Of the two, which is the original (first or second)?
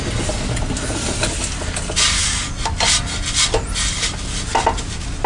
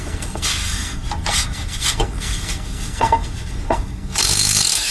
first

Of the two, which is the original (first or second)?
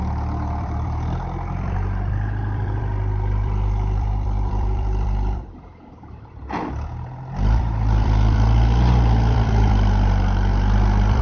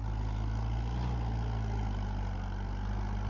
second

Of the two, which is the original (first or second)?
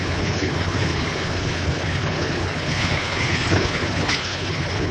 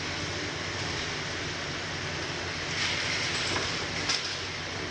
second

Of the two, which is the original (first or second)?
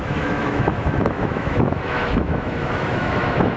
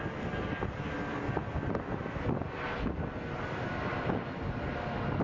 second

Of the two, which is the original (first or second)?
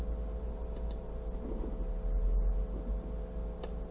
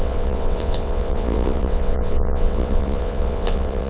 first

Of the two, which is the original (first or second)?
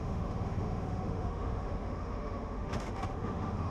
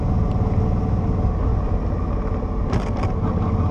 second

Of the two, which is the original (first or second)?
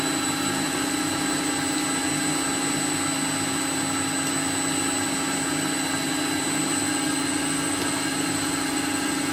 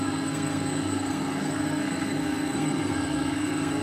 first